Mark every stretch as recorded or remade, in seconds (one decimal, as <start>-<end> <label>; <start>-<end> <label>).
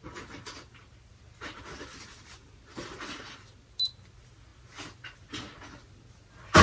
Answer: 0.0-6.6 recorded